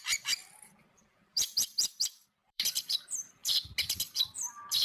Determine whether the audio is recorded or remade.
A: remade